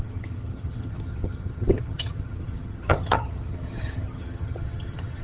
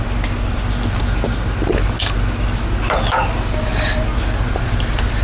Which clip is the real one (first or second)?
second